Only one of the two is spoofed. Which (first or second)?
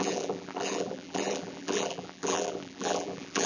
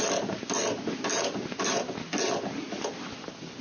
first